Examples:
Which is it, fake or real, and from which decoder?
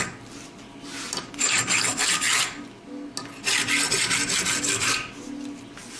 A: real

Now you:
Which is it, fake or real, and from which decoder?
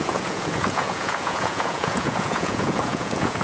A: fake, vocoder, Vocos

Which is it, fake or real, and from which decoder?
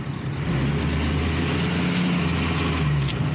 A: real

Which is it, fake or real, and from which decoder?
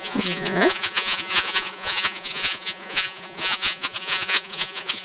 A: fake, vocoder, Vocos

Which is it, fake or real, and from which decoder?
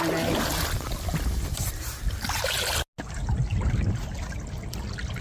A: real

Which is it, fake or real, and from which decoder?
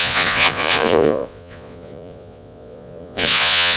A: fake, vocoder, Vocos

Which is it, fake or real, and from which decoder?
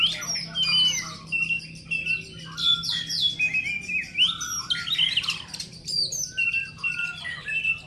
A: real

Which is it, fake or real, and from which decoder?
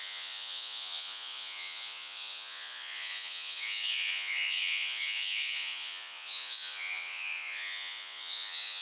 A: fake, vocoder, Vocos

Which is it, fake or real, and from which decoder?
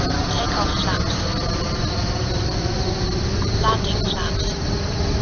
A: real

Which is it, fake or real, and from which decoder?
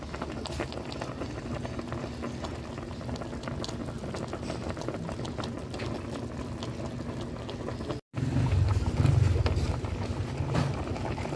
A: real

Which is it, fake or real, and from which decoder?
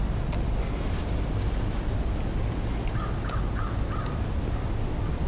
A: real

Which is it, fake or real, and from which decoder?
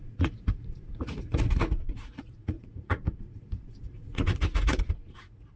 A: fake, vocoder, Vocos